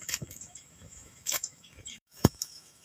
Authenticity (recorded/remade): remade